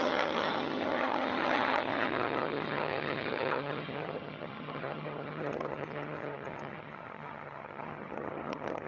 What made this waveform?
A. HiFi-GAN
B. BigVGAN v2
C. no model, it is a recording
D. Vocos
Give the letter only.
A